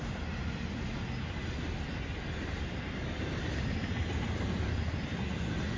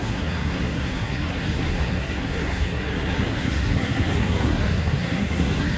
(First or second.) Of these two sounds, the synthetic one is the second